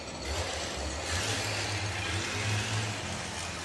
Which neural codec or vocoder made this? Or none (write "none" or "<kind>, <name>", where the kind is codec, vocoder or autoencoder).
none